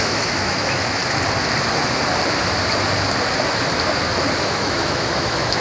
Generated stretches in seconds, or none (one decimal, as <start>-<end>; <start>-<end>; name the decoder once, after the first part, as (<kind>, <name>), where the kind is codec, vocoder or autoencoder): 0.0-1.0 (autoencoder, DAC-VAE); 4.4-5.6